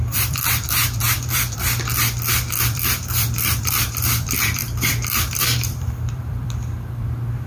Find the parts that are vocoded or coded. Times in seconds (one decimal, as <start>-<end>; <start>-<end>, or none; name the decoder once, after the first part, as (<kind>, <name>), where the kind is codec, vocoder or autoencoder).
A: 0.0-1.9 (vocoder, BigVGAN v2); 2.6-7.5